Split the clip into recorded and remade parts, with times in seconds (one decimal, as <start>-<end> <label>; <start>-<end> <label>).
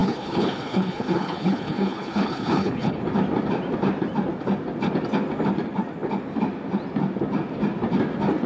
0.0-3.0 remade; 3.0-8.5 recorded